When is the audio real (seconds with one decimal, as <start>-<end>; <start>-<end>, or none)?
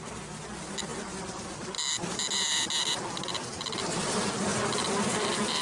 0.0-5.6